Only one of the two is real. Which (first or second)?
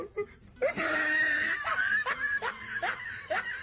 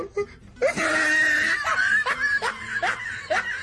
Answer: second